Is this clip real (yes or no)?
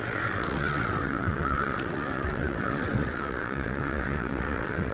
no